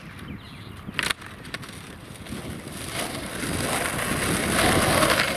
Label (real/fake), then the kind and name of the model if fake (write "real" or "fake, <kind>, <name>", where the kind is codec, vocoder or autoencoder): real